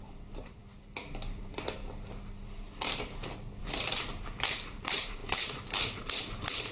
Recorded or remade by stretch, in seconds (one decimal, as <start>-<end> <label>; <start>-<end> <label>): 0.0-0.6 remade; 0.6-1.4 recorded; 1.4-1.8 remade; 1.8-3.6 recorded; 3.6-5.2 remade; 5.2-6.0 recorded; 6.0-6.7 remade

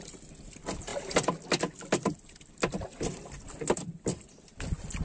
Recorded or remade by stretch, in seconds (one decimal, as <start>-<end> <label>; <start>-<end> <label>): 0.0-5.0 recorded

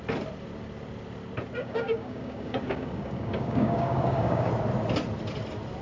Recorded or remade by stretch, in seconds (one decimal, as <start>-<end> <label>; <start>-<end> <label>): 0.0-1.6 recorded; 1.6-4.5 remade; 4.5-5.8 recorded

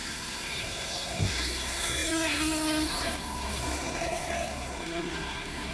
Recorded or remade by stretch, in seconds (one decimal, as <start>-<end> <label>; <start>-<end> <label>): 0.0-5.7 remade

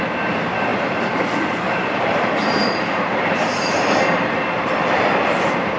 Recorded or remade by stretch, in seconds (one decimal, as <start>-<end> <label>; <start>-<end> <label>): 0.0-0.7 recorded; 0.7-4.2 remade; 4.2-5.8 recorded

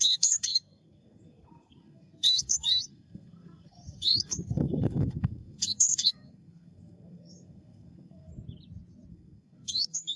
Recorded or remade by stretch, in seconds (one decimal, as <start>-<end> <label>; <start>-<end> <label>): 0.0-8.3 remade; 8.3-9.1 recorded; 9.1-10.2 remade

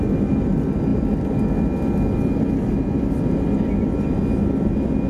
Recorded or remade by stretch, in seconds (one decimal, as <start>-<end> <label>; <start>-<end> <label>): 0.0-5.1 recorded

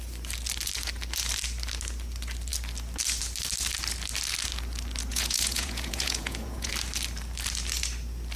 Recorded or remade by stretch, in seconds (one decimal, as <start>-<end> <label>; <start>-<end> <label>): 0.0-5.1 recorded; 5.1-6.7 remade; 6.7-8.4 recorded